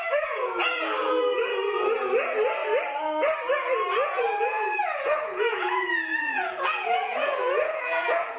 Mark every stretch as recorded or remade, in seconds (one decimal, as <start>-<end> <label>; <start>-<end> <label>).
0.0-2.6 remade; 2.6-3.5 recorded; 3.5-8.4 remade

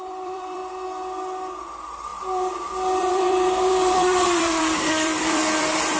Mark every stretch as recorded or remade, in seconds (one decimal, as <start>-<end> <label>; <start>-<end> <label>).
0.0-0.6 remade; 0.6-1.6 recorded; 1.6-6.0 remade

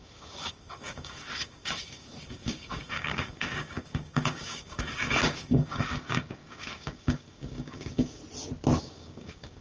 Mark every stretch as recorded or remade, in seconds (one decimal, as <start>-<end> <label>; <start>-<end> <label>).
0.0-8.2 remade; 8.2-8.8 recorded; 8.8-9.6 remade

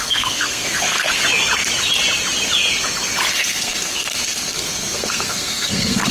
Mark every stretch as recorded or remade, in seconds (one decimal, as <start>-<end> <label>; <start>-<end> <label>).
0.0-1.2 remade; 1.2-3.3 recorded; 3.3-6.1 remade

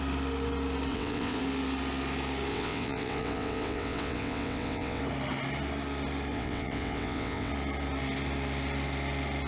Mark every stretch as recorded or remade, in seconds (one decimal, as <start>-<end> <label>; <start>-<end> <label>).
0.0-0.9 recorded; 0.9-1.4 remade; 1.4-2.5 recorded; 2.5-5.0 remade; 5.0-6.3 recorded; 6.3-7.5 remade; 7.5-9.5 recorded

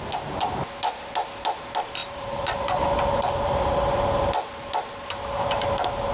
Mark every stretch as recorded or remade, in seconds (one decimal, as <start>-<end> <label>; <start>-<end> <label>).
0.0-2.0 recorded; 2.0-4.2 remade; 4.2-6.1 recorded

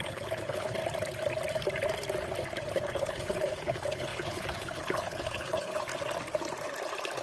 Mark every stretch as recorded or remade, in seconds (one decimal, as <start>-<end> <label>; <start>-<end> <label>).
0.0-0.8 remade; 0.8-2.7 recorded; 2.7-5.9 remade; 5.9-7.2 recorded

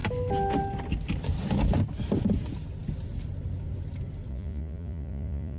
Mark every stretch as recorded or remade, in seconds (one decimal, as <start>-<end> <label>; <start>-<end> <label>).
0.0-4.3 recorded; 4.3-5.6 remade